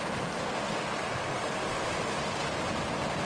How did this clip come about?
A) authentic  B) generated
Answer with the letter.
A